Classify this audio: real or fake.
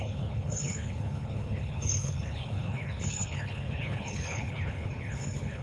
fake